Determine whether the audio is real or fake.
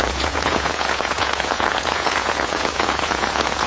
fake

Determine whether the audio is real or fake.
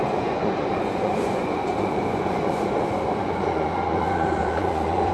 fake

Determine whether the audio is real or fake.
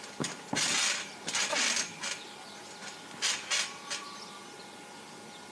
real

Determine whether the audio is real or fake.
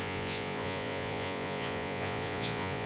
fake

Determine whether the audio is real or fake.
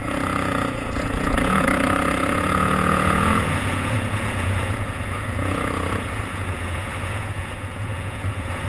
fake